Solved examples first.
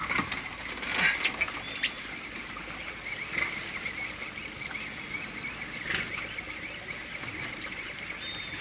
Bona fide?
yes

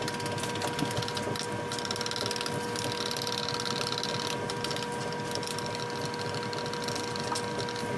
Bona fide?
yes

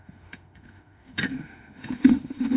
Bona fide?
no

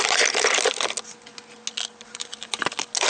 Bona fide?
yes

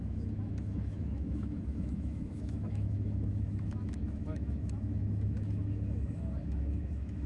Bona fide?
no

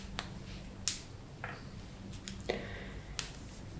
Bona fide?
yes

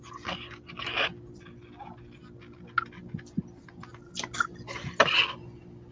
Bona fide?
yes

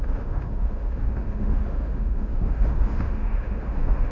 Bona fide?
no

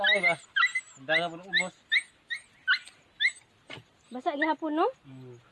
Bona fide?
yes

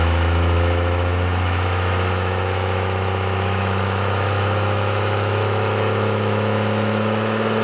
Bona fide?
no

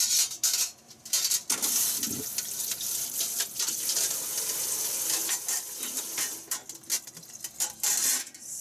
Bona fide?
yes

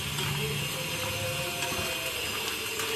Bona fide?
yes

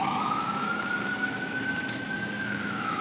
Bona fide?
no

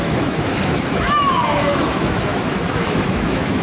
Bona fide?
no